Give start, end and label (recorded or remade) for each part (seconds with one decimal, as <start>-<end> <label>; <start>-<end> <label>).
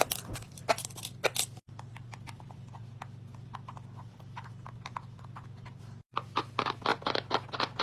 0.0-7.8 recorded